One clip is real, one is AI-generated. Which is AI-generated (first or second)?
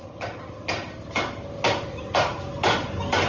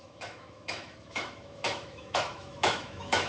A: second